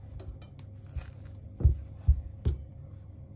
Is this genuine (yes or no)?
yes